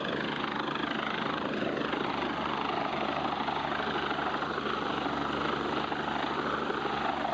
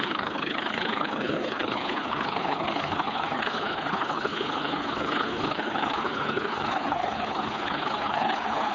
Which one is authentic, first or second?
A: first